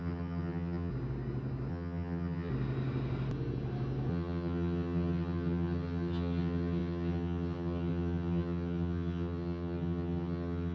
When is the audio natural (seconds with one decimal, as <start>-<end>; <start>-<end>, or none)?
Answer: 0.9-1.7; 2.5-4.1

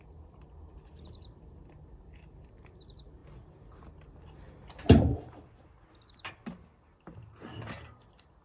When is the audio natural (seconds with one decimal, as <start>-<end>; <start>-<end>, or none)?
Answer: 0.0-8.4